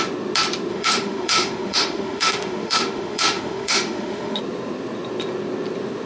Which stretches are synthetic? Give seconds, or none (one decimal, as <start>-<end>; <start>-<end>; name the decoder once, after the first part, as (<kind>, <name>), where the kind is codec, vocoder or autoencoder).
0.7-4.4 (autoencoder, DAC-VAE)